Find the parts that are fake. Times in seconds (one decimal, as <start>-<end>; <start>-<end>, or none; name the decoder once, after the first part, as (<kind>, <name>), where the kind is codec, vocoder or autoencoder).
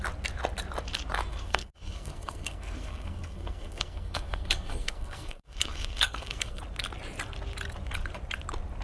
1.3-6.6 (codec, SNAC)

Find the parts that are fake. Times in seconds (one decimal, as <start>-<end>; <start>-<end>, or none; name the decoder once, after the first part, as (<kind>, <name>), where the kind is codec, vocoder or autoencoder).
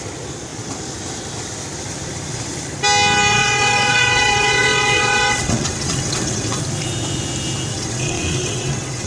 3.3-6.6 (vocoder, WaveNeXt); 7.7-9.1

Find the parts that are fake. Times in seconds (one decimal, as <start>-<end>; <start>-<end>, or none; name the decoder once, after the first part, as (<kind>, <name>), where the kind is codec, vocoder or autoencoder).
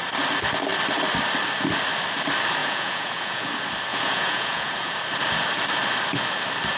2.6-3.5 (vocoder, Vocos); 3.9-4.9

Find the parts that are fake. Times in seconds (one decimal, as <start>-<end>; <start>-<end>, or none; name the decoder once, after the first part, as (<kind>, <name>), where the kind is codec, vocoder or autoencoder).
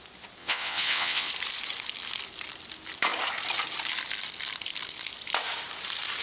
0.4-1.3 (vocoder, WaveNeXt)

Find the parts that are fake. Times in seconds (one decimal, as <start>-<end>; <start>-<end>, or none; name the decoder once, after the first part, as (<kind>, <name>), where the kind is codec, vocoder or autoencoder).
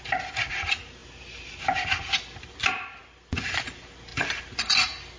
1.0-2.2 (vocoder, BigVGAN v2)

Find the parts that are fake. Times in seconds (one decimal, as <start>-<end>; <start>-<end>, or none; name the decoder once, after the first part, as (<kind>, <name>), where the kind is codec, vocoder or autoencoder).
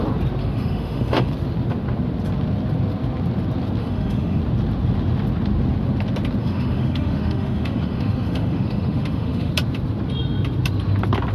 0.4-1.3 (autoencoder, DAC-VAE); 3.8-4.4; 6.4-9.5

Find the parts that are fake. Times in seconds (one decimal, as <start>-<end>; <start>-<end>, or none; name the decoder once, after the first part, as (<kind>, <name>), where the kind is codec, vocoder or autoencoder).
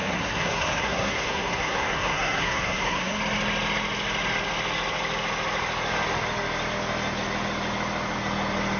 0.0-3.2 (codec, SNAC)